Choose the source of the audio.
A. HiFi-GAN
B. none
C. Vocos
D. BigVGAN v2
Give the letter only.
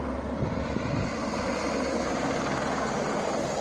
D